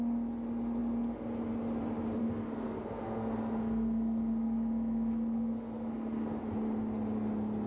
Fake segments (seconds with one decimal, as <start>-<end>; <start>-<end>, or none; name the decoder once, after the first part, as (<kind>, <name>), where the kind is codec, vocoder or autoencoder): 2.2-6.4 (codec, SNAC)